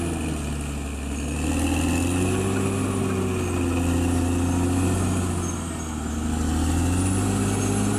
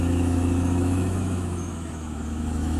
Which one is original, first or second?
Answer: first